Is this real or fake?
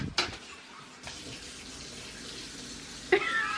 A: real